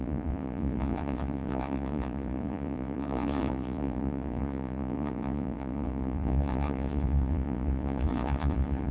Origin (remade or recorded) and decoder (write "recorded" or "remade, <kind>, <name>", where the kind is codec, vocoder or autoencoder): remade, vocoder, Vocos